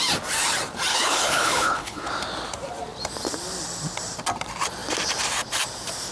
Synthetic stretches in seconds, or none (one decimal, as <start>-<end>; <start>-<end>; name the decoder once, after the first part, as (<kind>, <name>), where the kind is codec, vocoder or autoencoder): 0.9-2.1 (codec, HILCodec)